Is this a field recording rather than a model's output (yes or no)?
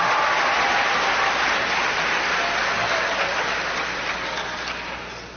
yes